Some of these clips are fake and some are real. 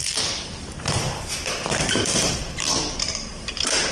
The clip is fake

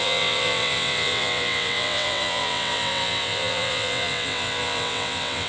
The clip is fake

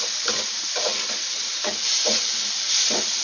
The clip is real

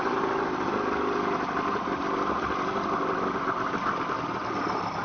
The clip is fake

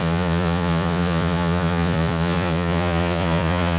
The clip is fake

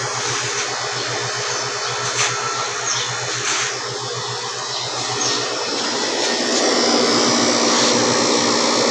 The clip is real